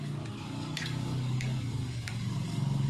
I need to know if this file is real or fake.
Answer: fake